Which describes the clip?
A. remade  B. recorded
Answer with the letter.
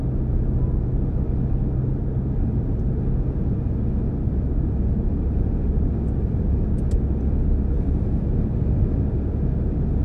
B